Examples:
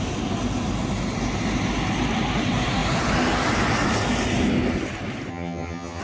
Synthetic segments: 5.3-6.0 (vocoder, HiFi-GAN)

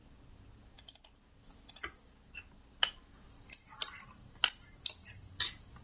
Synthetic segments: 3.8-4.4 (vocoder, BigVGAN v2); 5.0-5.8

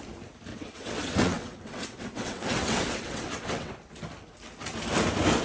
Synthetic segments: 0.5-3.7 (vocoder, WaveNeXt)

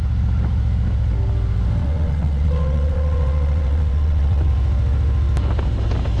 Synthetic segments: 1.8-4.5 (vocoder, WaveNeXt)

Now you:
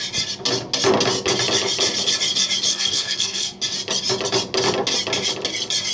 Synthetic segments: 2.7-3.6 (codec, SNAC)

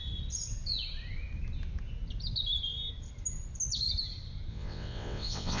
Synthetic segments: 4.5-5.6 (vocoder, WaveNeXt)

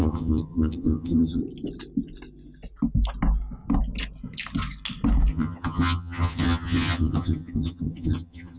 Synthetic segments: 0.0-1.4 (vocoder, HiFi-GAN); 5.3-8.6

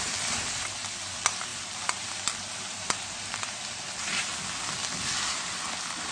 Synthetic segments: 0.0-4.3 (vocoder, BigVGAN v2); 5.3-6.1